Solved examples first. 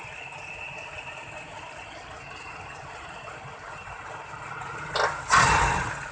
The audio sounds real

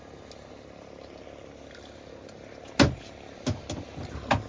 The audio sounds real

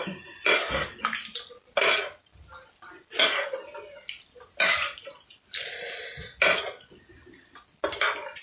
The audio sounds real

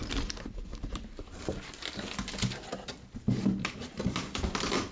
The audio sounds fake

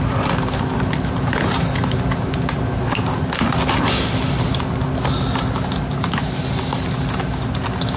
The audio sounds real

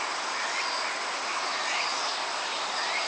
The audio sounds real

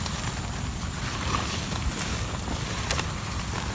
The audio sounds real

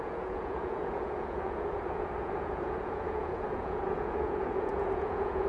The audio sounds fake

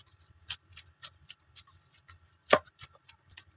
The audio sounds real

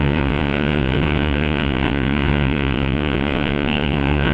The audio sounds fake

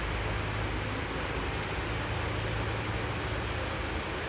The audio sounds real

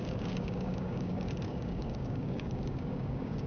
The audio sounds fake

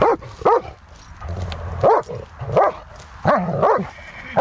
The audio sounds real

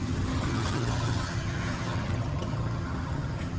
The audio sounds fake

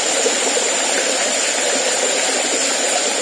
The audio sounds real